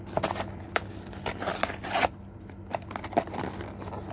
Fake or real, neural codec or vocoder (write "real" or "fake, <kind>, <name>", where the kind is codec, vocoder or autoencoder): real